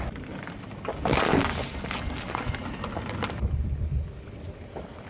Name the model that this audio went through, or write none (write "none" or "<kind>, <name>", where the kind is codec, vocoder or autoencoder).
none